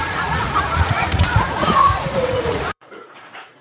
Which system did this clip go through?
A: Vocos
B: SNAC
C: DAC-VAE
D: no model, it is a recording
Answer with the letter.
A